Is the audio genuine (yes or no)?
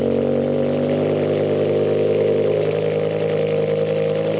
yes